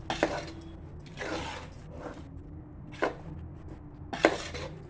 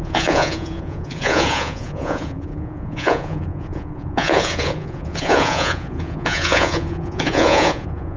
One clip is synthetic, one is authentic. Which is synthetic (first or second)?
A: second